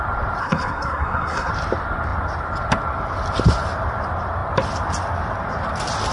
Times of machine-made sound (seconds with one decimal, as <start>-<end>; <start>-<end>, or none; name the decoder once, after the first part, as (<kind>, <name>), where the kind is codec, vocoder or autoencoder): 0.4-1.5 (codec, SNAC)